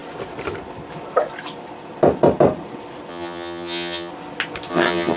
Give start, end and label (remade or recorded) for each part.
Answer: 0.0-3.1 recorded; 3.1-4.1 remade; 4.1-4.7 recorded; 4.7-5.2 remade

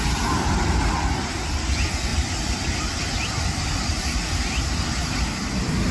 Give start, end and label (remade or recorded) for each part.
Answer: 0.0-5.9 recorded